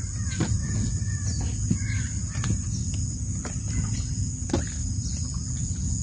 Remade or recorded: recorded